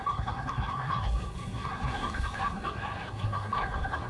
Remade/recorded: remade